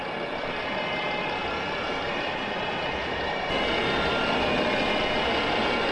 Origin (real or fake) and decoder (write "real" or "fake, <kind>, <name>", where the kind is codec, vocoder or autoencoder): real